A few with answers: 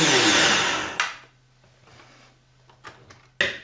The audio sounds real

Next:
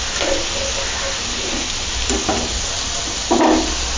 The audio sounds real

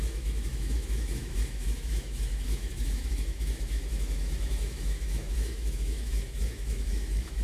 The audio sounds fake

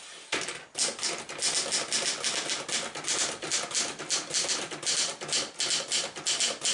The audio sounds real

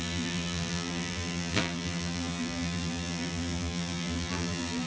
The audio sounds fake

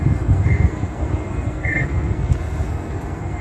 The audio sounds fake